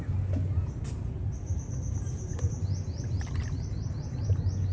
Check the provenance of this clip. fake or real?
real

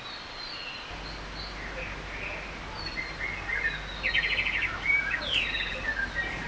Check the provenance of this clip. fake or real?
real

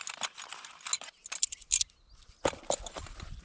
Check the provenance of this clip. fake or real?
real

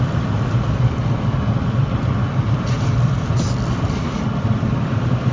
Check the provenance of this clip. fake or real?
fake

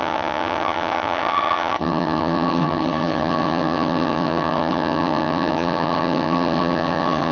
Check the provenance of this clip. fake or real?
fake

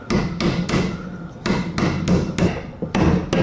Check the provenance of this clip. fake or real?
real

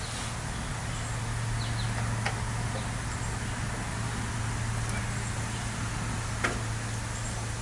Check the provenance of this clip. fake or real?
real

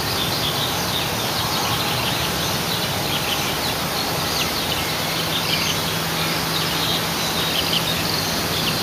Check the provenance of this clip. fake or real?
real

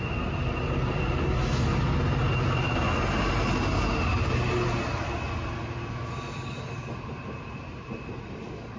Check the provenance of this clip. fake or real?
real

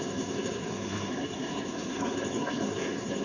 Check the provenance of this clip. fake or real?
fake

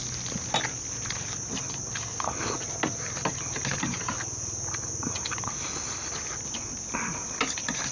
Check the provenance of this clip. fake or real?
real